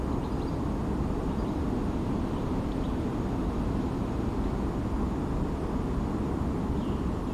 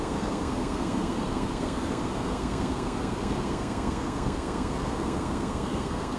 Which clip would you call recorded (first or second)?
first